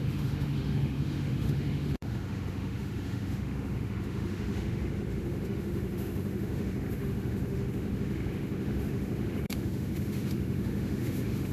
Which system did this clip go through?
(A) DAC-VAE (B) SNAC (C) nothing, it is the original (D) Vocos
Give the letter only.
A